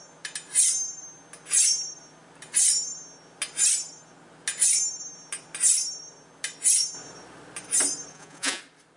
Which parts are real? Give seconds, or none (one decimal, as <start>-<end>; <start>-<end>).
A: 0.0-8.1; 8.6-9.0